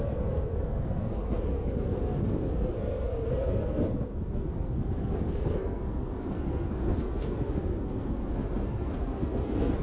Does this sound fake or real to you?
fake